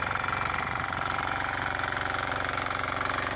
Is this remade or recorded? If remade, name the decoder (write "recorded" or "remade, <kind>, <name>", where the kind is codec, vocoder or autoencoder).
remade, vocoder, BigVGAN v2